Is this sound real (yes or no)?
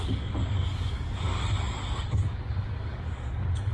no